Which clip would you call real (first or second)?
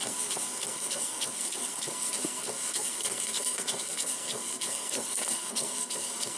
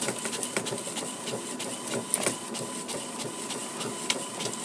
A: second